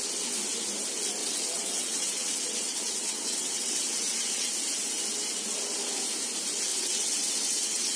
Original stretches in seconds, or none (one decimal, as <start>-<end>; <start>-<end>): 0.0-1.2; 4.5-6.7